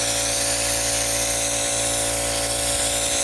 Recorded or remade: recorded